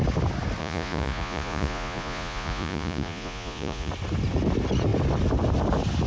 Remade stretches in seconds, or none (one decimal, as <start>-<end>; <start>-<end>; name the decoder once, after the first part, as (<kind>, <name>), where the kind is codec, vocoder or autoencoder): 0.6-3.9 (vocoder, Vocos)